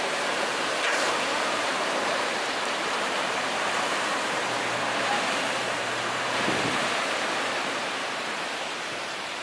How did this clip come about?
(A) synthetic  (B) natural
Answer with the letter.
A